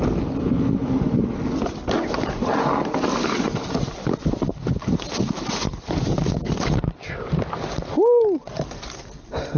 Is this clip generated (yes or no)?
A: no